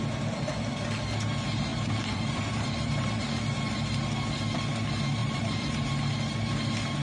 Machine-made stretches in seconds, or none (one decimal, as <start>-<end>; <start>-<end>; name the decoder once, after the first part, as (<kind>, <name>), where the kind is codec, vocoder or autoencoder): 1.7-3.2 (vocoder, BigVGAN v2); 5.2-5.9